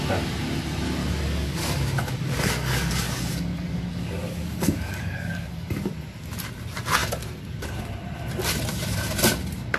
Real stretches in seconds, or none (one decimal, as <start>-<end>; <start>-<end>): 0.0-1.0; 5.9-9.8